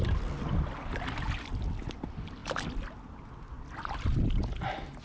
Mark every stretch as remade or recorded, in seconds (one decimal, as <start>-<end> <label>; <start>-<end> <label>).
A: 0.0-5.0 recorded